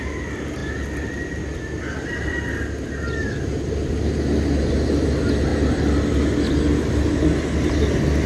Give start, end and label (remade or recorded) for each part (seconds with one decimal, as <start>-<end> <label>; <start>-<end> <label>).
0.0-8.3 recorded